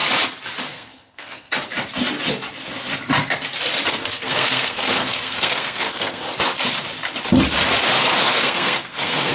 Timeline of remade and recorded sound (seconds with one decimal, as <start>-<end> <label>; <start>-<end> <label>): 0.0-0.7 recorded; 0.7-1.5 remade; 1.5-3.9 recorded; 3.9-6.2 remade; 6.2-8.0 recorded; 8.0-9.3 remade